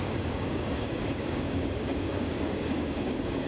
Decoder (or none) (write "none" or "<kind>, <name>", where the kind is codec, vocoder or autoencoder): codec, DAC